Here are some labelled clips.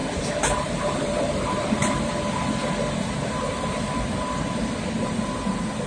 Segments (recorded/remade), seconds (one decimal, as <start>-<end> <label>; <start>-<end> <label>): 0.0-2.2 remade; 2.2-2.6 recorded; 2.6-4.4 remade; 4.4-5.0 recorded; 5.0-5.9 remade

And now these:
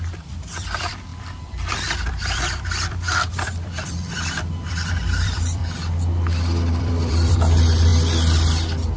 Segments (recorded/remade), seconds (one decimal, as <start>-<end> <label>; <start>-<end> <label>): 0.0-5.6 remade; 5.6-6.8 recorded; 6.8-7.9 remade; 7.9-9.0 recorded

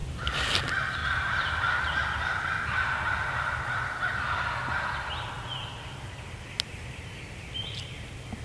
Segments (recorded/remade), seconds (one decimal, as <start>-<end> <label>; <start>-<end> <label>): 0.0-1.0 recorded; 1.0-2.4 remade; 2.4-8.4 recorded

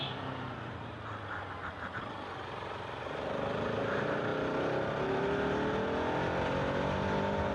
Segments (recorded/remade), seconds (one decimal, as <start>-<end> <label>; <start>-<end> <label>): 0.0-7.5 recorded